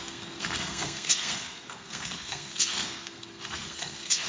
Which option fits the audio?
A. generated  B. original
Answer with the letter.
A